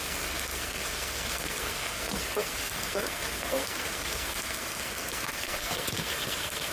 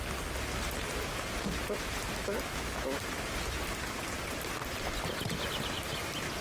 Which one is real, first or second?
second